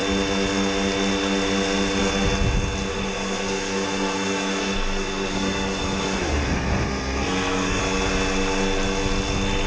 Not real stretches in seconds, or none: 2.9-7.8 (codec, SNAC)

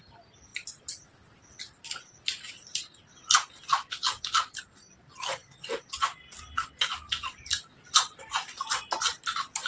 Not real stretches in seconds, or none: none